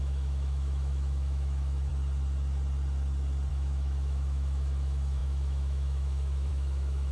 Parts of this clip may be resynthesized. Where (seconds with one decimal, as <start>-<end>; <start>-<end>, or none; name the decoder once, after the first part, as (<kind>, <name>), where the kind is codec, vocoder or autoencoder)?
0.0-1.9 (autoencoder, DAC-VAE); 3.5-7.1